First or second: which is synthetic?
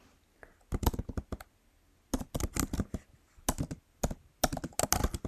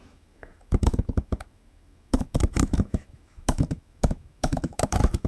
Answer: second